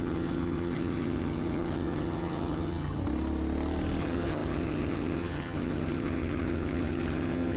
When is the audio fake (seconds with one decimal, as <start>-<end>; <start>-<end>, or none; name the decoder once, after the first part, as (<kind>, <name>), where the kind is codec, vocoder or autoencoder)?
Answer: 0.0-3.0 (vocoder, HiFi-GAN); 4.0-7.6